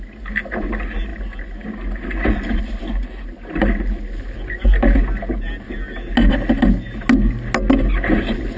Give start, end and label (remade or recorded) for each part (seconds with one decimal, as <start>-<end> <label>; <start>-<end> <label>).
0.0-8.6 recorded